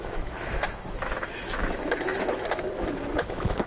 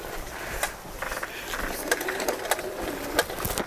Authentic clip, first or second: second